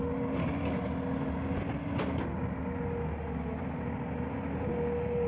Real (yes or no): yes